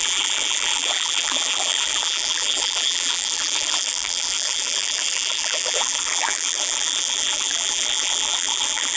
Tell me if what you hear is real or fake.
fake